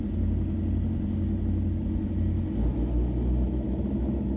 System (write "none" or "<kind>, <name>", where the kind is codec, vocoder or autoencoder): none